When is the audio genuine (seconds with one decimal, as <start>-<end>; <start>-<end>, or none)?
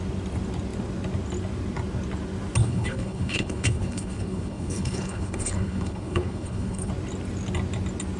0.0-2.6; 6.9-8.2